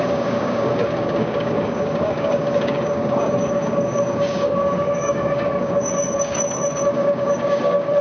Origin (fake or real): fake